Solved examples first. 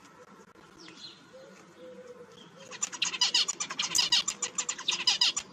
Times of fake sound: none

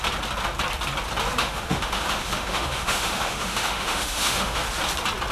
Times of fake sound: 1.4-4.6 (autoencoder, DAC-VAE)

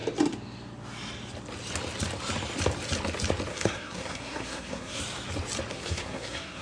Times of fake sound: 3.5-5.0 (codec, SNAC); 5.7-6.6

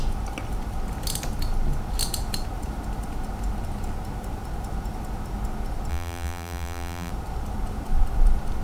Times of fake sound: 5.9-7.1 (vocoder, BigVGAN v2)

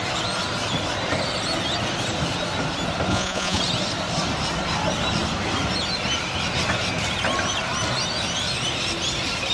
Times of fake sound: 3.1-3.6 (vocoder, Vocos)